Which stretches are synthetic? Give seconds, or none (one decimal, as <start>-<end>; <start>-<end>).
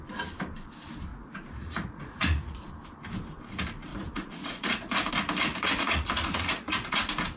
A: 1.1-2.7; 3.9-5.1; 5.5-7.0